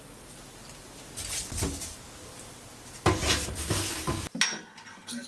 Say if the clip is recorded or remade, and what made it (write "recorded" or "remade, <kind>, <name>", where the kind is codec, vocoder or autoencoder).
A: recorded